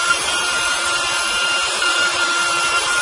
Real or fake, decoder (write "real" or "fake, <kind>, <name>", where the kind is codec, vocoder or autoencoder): fake, vocoder, BigVGAN v2